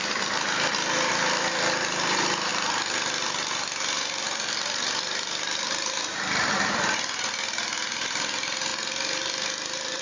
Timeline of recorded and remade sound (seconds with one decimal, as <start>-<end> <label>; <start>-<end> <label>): 0.0-10.0 remade